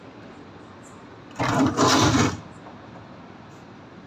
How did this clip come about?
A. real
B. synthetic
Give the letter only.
A